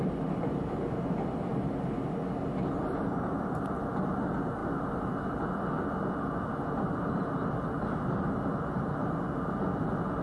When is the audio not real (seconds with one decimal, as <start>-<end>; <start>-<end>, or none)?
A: none

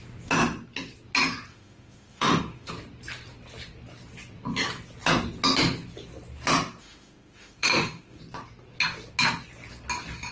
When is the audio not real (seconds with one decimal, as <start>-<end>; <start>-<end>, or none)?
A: 1.5-2.7; 6.8-8.2

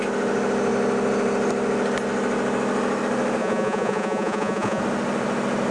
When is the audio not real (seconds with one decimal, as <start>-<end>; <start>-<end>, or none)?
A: 3.4-4.8

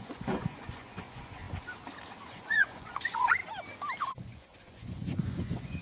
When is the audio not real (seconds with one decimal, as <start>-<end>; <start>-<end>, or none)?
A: 0.0-1.4; 2.3-3.4; 4.0-5.8

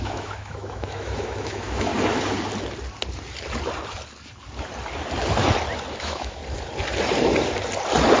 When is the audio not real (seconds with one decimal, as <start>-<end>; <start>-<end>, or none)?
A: 0.0-1.9; 6.0-6.4

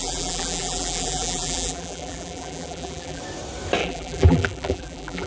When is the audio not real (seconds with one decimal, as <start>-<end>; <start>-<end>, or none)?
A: 0.0-3.2; 3.8-5.3